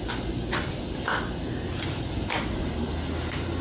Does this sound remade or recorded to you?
recorded